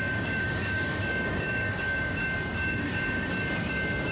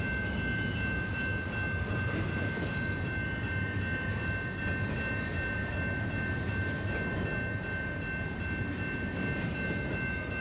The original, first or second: second